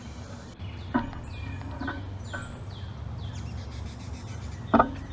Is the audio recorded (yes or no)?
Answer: yes